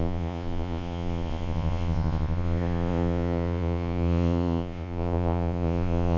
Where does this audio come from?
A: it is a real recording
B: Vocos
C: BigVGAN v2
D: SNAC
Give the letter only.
B